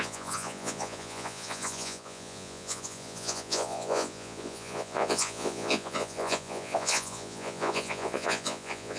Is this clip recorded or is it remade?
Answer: remade